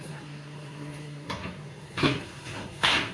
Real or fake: fake